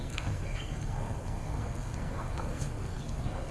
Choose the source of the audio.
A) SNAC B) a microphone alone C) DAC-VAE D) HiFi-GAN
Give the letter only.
A